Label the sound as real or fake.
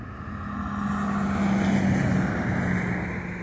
real